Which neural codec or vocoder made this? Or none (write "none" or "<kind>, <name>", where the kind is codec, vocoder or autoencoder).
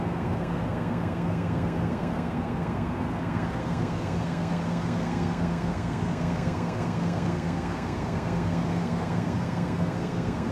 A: codec, SNAC